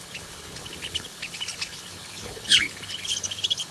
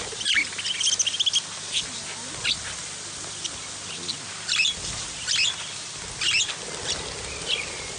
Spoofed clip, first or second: first